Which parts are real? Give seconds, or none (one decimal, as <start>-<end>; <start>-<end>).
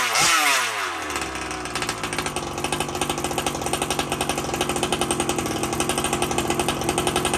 0.0-7.4